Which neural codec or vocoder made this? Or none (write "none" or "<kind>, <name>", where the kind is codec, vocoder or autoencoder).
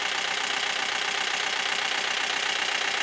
vocoder, BigVGAN v2